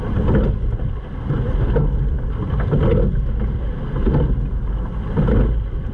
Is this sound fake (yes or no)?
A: no